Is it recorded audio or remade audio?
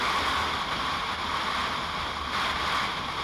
recorded